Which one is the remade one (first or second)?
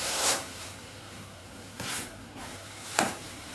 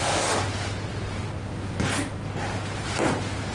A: first